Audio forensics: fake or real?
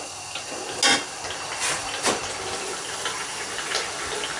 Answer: real